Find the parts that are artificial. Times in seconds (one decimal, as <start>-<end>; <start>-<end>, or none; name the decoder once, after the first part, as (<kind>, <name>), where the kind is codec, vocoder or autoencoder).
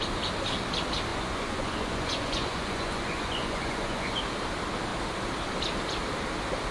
1.1-4.2 (vocoder, Vocos)